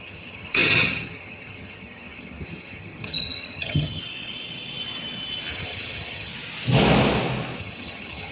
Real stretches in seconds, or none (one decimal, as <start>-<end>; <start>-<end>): 4.0-5.5; 6.3-7.6